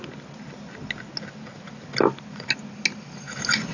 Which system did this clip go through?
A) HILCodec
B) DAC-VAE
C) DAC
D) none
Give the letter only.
D